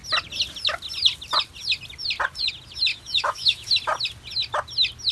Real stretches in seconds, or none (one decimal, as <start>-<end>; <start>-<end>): 0.0-2.9; 3.7-5.1